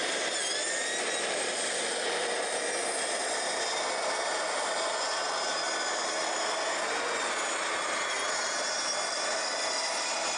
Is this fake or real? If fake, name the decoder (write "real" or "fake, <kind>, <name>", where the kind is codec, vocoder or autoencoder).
real